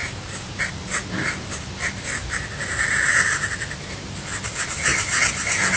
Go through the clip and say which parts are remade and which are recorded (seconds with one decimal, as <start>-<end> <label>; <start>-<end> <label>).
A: 0.0-5.8 recorded